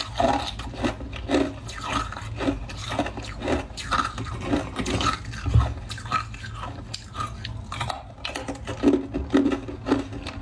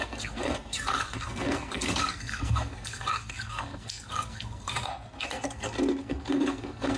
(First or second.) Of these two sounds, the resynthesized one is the second